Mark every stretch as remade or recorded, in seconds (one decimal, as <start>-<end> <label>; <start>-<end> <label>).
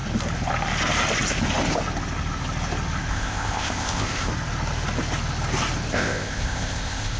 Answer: 0.0-3.1 recorded; 3.1-4.3 remade; 4.3-5.9 recorded; 5.9-7.2 remade